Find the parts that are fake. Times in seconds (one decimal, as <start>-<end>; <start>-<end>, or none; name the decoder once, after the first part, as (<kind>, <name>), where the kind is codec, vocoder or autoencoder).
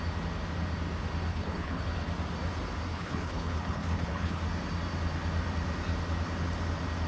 1.3-1.8 (codec, HILCodec); 2.9-4.4